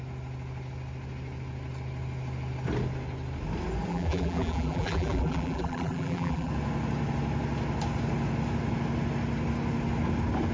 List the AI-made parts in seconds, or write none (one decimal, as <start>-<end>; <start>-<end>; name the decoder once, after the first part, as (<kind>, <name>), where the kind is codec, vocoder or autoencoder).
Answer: 3.9-6.5 (vocoder, BigVGAN v2)

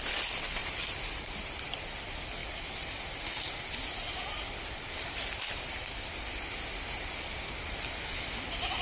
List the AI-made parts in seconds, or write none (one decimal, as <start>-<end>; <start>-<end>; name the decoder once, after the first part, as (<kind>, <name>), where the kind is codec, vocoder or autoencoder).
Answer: none